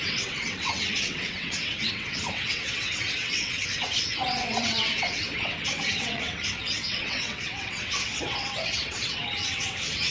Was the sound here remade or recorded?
remade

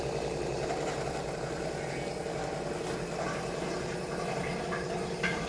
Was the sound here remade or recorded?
recorded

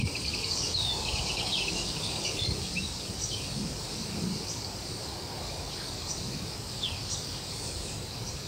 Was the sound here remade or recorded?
remade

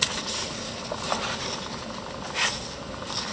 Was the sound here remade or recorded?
recorded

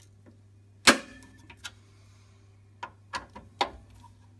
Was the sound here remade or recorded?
recorded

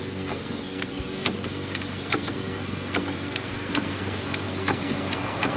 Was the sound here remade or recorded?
remade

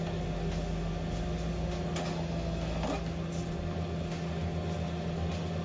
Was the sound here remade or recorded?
recorded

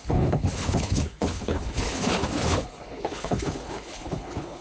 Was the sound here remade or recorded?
remade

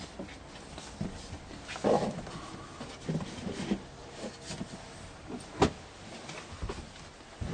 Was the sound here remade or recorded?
recorded